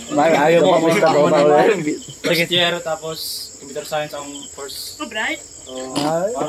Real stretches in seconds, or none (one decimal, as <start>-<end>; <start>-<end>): 0.0-6.5